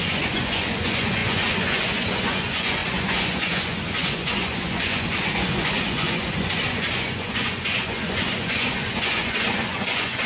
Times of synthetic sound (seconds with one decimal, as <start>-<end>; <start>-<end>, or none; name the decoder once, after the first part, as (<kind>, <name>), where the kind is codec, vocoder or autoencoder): 0.0-10.3 (vocoder, Vocos)